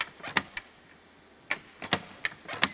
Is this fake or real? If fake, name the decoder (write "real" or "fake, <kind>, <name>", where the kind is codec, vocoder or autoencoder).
real